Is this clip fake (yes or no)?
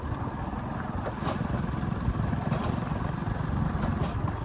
no